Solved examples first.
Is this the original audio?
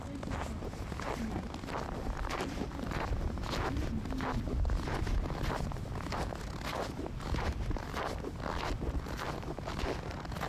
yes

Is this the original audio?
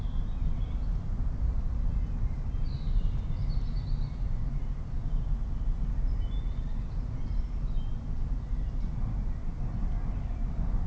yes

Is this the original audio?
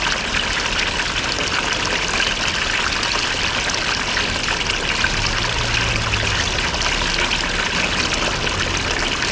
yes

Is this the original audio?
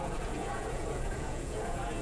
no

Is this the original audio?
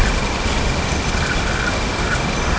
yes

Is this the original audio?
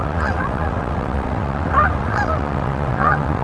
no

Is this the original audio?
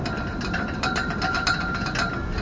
yes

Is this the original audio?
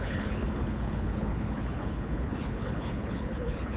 no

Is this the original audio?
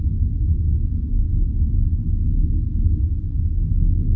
yes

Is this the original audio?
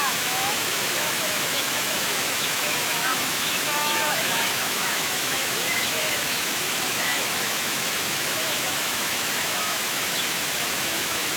no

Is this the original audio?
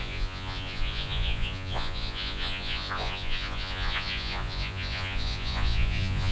no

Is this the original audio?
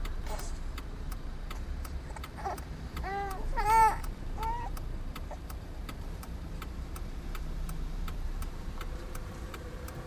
no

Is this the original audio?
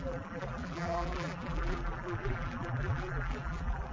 no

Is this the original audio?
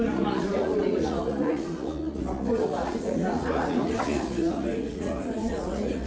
no